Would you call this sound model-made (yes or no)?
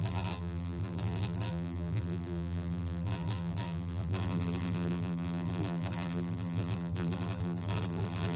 yes